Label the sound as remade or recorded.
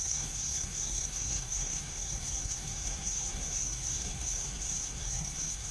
remade